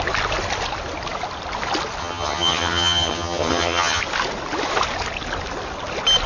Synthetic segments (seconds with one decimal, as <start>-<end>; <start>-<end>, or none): 2.0-4.0